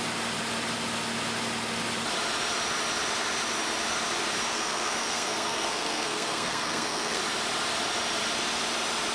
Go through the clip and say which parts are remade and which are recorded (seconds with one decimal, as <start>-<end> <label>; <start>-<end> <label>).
0.0-4.5 recorded; 4.5-7.2 remade; 7.2-9.1 recorded